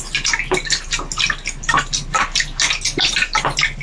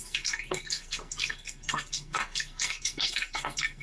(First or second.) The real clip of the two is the first